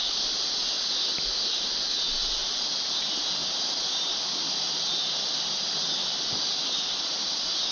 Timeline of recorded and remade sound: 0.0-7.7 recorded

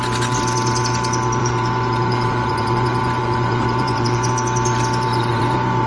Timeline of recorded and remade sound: 0.0-1.4 recorded; 1.4-4.3 remade; 4.3-5.1 recorded; 5.1-5.9 remade

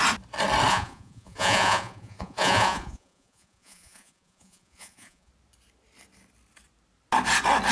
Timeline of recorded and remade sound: 0.0-0.7 recorded; 0.7-5.3 remade; 5.3-7.7 recorded

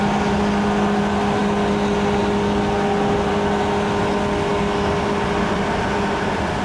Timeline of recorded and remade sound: 0.0-6.6 recorded

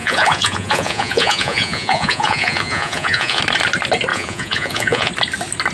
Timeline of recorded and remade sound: 0.0-3.4 remade; 3.4-4.1 recorded; 4.1-5.1 remade; 5.1-5.7 recorded

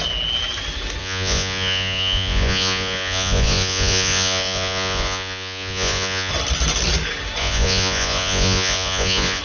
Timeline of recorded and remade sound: 0.0-1.0 recorded; 1.0-6.3 remade; 6.3-7.4 recorded; 7.4-9.4 remade

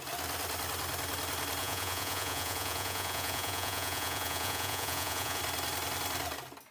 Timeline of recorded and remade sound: 0.0-1.6 recorded; 1.6-5.4 remade; 5.4-6.7 recorded

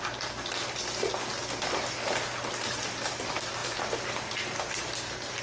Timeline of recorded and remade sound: 0.0-5.4 recorded